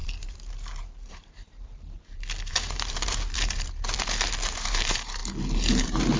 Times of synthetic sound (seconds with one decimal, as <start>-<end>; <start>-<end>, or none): 0.0-5.2; 5.8-6.2